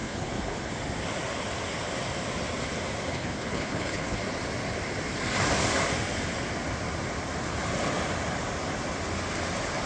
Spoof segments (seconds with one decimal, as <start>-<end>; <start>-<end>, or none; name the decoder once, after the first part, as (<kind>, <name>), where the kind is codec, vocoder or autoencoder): 0.0-0.7 (codec, HILCodec); 3.1-4.2